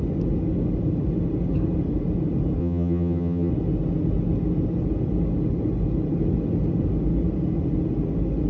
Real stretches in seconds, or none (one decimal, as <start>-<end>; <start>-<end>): 0.0-2.6; 3.5-8.5